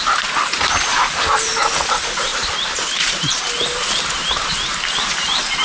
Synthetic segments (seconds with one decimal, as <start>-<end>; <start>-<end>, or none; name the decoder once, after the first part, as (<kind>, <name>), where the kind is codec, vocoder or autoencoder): 0.9-1.5 (vocoder, BigVGAN v2); 2.3-3.4